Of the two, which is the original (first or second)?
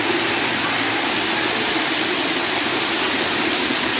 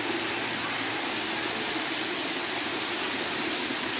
second